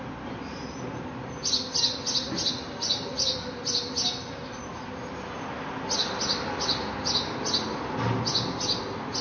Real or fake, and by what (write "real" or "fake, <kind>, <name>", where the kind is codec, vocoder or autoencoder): real